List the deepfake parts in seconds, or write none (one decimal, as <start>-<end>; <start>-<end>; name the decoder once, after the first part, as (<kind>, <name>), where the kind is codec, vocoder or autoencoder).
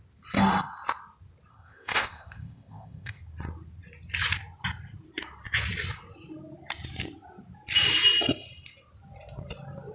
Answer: 1.5-3.2 (codec, ZipCodec)